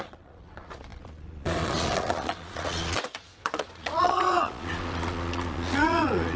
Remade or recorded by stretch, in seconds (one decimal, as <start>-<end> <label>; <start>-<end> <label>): 0.0-6.4 remade